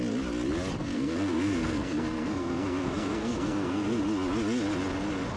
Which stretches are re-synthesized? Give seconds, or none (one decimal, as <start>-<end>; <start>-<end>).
0.8-4.0